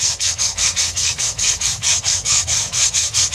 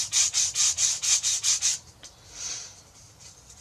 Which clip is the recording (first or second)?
second